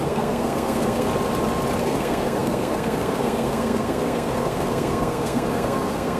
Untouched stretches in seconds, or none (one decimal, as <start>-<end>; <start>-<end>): 1.1-1.8